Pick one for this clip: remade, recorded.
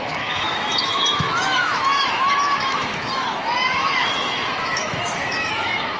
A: remade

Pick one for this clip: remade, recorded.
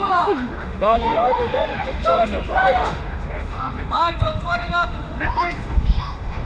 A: remade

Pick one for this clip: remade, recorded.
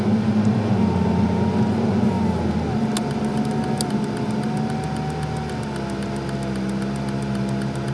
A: recorded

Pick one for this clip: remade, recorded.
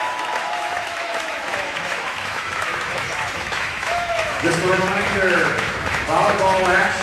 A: remade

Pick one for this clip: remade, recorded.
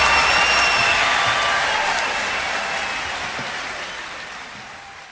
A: recorded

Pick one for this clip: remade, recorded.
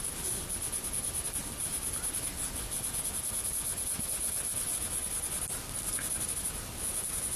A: recorded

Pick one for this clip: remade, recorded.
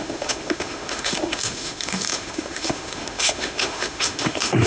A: remade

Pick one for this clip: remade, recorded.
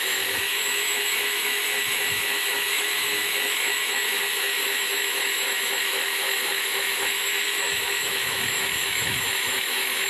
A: remade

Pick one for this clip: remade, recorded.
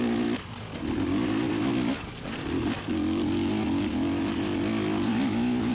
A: recorded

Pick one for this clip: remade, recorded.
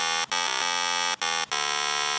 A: recorded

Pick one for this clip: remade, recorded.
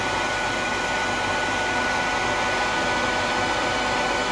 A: recorded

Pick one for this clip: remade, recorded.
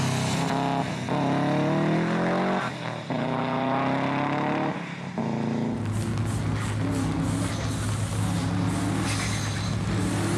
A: recorded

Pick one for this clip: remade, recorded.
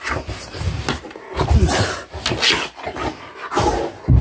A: recorded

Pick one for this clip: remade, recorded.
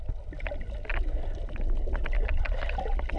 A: recorded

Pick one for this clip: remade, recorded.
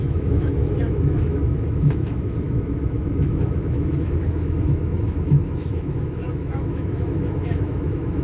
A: remade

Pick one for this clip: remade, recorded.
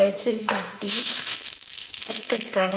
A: remade